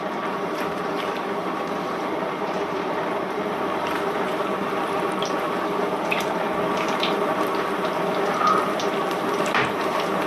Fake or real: fake